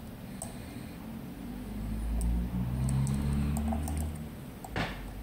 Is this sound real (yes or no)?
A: yes